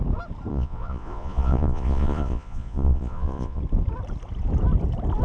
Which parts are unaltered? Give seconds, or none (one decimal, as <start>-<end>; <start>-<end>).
0.0-0.5; 3.6-5.2